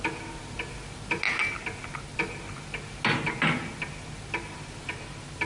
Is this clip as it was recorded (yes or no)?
yes